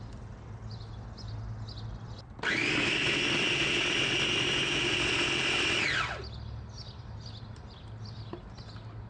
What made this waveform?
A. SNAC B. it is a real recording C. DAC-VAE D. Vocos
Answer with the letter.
B